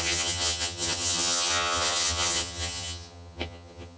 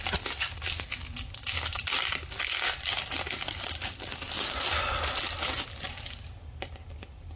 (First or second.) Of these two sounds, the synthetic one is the first